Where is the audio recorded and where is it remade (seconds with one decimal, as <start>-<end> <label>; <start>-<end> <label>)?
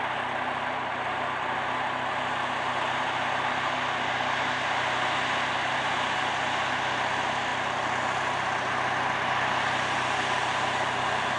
0.0-11.4 recorded